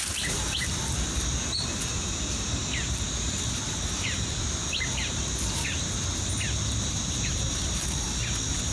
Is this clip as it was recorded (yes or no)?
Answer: yes